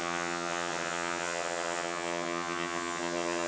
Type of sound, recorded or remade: remade